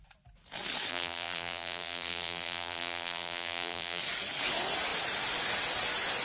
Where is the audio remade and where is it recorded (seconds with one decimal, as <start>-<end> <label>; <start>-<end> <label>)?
0.0-0.9 recorded; 0.9-4.0 remade; 4.0-6.2 recorded